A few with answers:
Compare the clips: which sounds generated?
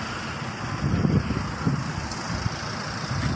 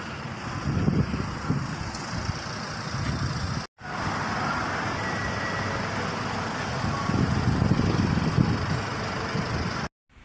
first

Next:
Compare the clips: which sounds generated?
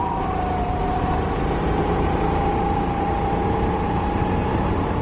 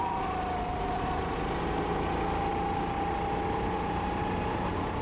first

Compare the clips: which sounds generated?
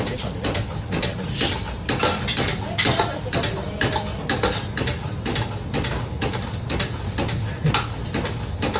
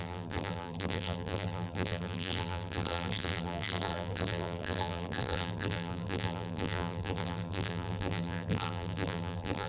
second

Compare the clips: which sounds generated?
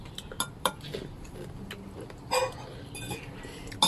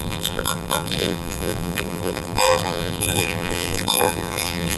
second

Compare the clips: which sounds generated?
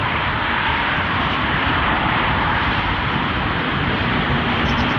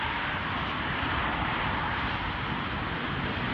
first